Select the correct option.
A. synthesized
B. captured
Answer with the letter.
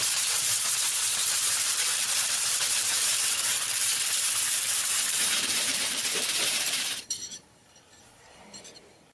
A